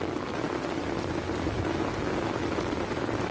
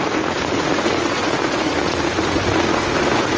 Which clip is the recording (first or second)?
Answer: first